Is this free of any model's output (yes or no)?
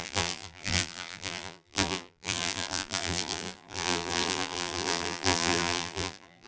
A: no